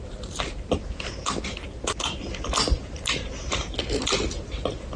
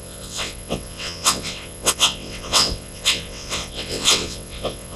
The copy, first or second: second